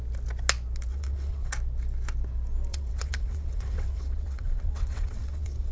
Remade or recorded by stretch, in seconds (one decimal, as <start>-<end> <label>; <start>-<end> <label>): 0.0-0.9 recorded; 0.9-1.5 remade; 1.5-2.7 recorded; 2.7-5.7 remade